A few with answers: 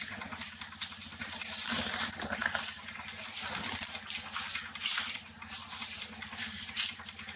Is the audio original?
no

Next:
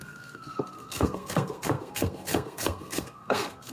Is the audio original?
no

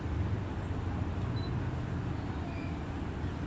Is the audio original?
yes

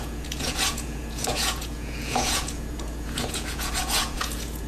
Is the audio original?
no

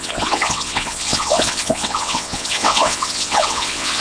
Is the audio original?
no